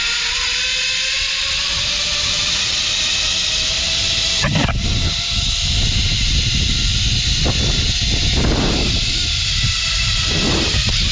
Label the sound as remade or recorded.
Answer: recorded